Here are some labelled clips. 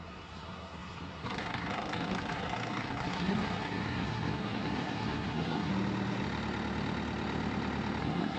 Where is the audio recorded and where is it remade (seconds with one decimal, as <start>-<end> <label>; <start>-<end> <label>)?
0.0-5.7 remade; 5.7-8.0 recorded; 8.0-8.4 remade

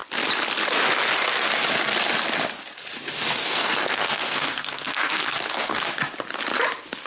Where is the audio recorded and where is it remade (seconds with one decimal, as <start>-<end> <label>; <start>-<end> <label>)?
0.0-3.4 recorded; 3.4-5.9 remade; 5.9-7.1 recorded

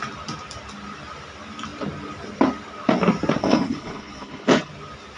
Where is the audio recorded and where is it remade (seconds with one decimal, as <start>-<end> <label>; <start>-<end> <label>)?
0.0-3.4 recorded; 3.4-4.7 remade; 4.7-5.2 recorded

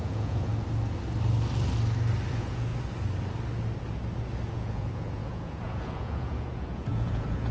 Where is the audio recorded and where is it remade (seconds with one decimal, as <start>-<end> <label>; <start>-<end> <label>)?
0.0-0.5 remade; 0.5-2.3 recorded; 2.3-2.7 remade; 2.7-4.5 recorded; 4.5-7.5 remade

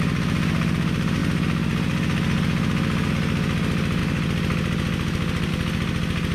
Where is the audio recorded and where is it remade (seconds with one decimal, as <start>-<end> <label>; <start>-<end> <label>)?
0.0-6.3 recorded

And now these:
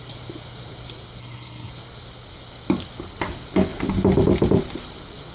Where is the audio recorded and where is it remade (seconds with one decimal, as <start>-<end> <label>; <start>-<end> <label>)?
0.0-1.2 recorded; 1.2-1.7 remade; 1.7-5.3 recorded